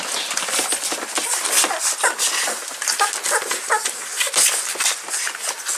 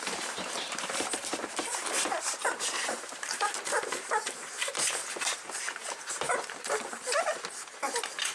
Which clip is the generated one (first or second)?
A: second